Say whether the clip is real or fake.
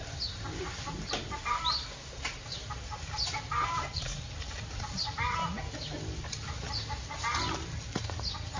real